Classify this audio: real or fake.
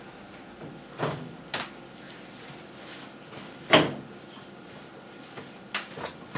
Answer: real